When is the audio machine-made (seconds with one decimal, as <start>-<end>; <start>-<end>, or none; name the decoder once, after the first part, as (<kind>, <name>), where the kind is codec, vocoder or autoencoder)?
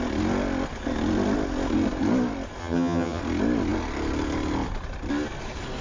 2.6-3.2 (vocoder, HiFi-GAN)